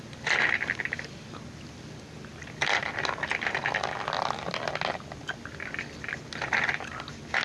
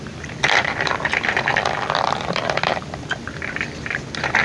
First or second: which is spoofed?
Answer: second